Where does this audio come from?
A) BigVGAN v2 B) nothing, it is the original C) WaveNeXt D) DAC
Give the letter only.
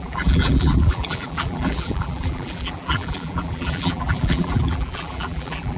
A